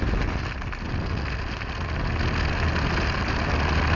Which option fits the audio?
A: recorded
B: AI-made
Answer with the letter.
A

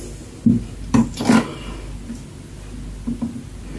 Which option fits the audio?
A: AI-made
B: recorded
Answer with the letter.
B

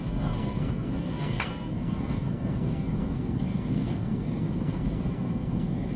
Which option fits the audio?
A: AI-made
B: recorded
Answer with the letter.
A